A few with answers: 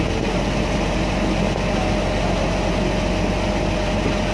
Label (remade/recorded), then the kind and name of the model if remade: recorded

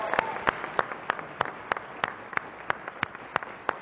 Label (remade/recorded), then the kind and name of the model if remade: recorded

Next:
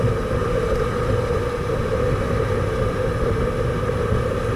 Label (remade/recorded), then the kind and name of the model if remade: recorded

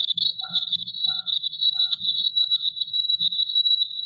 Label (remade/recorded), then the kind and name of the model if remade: recorded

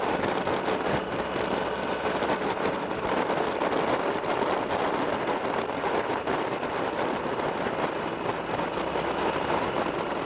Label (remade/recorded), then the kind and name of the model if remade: recorded